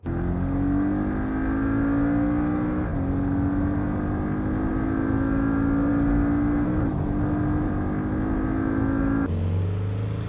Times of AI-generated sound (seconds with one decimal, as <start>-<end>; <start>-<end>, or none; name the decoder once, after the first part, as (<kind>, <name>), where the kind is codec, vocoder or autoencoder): none